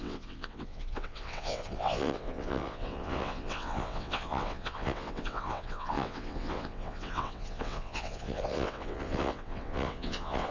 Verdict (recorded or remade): remade